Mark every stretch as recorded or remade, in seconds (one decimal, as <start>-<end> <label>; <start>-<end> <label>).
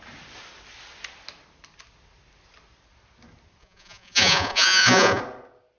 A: 0.0-3.6 recorded; 3.6-5.2 remade; 5.2-5.8 recorded